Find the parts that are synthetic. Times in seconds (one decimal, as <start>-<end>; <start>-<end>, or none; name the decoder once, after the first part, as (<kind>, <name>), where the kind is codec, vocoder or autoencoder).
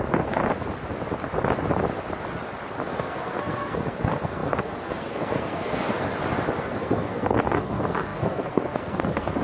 0.0-0.4 (codec, SNAC); 2.9-6.1; 6.6-9.4